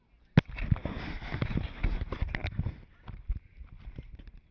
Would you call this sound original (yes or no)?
yes